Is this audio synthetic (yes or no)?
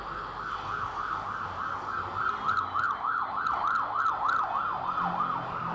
no